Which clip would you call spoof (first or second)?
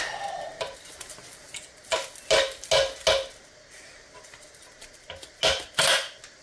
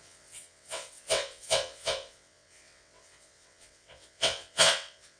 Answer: second